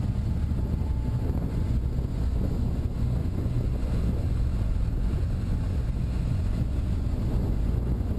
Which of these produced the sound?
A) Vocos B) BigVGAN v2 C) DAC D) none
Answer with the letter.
A